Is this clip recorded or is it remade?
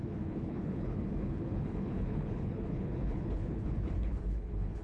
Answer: remade